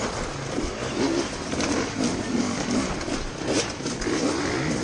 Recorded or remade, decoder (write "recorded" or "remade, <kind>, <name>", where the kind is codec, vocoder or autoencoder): recorded